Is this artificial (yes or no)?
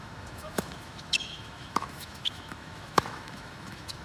yes